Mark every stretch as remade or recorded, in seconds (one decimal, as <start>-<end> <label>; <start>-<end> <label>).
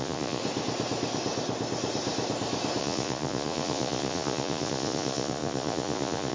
0.0-0.4 remade; 0.4-2.8 recorded; 2.8-6.3 remade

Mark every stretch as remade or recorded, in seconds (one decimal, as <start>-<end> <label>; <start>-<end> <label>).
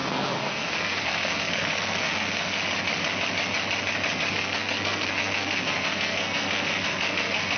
0.0-2.6 remade; 2.6-4.3 recorded; 4.3-7.6 remade